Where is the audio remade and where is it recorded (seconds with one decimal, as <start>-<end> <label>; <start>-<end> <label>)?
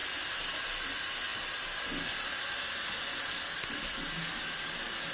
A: 0.0-5.1 recorded